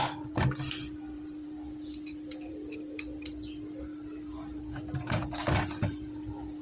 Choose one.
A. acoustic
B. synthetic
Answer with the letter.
B